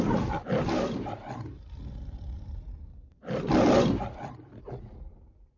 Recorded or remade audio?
remade